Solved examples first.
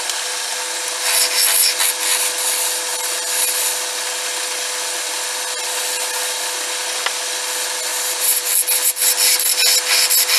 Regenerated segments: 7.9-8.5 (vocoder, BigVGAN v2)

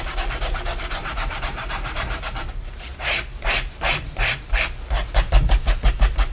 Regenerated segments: 1.0-4.5 (vocoder, BigVGAN v2)

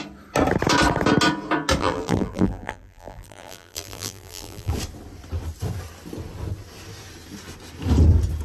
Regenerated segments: 1.8-4.7 (vocoder, BigVGAN v2)

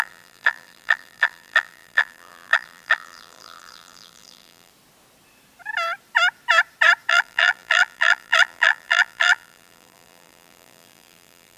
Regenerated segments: 0.0-4.7 (vocoder, BigVGAN v2); 7.1-11.6

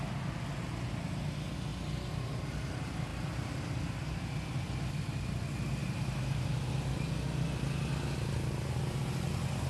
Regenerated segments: 5.8-6.7 (vocoder, BigVGAN v2)

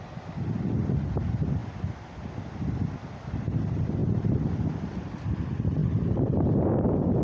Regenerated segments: none